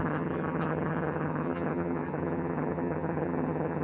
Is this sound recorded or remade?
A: remade